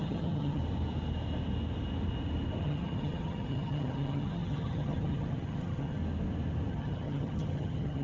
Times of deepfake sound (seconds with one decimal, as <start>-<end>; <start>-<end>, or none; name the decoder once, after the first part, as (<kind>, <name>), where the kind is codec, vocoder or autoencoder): 0.0-0.6 (vocoder, HiFi-GAN); 2.6-6.0; 6.7-8.0